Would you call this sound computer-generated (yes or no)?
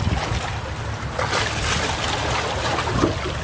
no